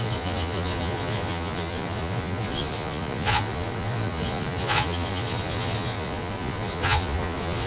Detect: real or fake fake